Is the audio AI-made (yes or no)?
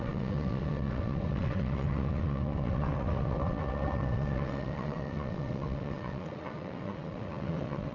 yes